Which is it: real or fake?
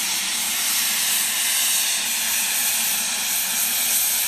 real